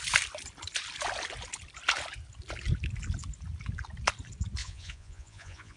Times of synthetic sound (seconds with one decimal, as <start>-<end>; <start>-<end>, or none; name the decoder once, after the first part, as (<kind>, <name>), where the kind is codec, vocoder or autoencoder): 4.6-5.8 (vocoder, Vocos)